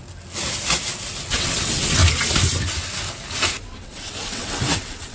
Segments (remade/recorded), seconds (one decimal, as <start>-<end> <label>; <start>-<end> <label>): 0.0-1.3 recorded; 1.3-2.0 remade; 2.0-3.7 recorded; 3.7-5.1 remade